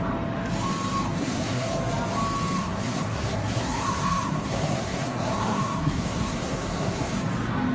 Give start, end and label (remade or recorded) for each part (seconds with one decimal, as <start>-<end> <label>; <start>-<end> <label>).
0.0-1.2 recorded; 1.2-1.7 remade; 1.7-2.6 recorded; 2.6-7.2 remade; 7.2-7.7 recorded